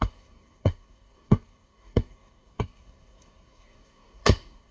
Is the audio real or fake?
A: fake